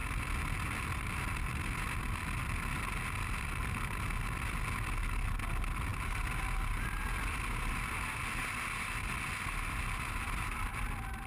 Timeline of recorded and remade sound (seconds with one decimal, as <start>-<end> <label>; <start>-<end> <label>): 0.0-11.3 recorded